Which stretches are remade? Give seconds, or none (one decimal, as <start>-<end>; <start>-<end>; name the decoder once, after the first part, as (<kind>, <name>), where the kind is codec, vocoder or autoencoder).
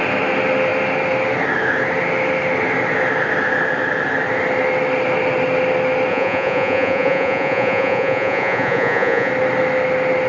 6.1-9.3 (vocoder, Vocos)